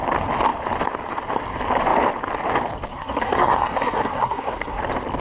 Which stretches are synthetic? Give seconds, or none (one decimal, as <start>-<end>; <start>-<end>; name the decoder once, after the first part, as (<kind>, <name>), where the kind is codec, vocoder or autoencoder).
2.9-4.8 (codec, SNAC)